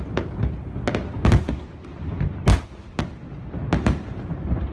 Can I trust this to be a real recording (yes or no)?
yes